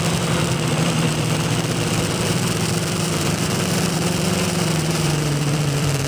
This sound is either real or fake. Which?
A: fake